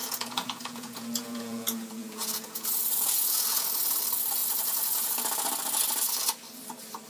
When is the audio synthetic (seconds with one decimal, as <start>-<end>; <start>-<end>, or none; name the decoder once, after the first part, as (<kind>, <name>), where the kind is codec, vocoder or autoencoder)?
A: 0.0-4.0 (vocoder, Vocos); 4.4-5.1